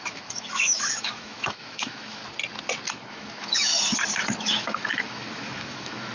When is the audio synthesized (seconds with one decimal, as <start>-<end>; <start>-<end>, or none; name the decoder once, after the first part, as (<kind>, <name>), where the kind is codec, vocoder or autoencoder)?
0.0-2.2 (autoencoder, DAC-VAE); 2.9-3.7; 4.4-6.1